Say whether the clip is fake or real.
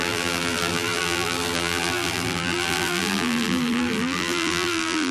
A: fake